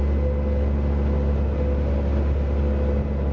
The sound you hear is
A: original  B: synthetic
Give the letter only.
A